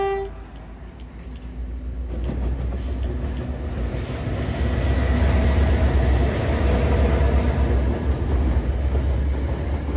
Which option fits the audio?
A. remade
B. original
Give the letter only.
B